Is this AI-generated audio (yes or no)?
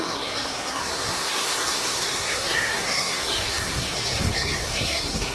yes